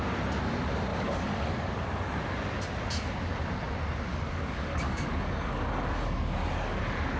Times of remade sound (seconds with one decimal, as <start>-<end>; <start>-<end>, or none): 0.9-1.7; 4.1-6.8